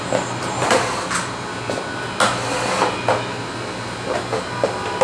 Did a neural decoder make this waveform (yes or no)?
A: no